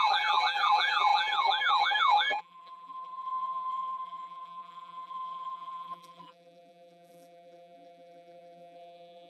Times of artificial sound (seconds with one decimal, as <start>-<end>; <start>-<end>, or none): 0.0-9.3